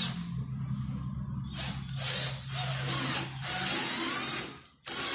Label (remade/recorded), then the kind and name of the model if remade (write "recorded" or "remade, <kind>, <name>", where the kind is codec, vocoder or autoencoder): recorded